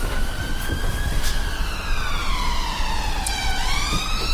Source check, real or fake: real